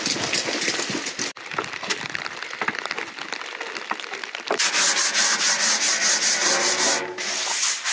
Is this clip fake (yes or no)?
no